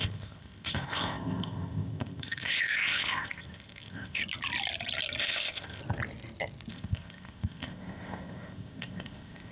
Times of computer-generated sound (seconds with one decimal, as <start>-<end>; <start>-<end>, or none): 0.0-4.2; 5.2-5.8; 6.7-9.5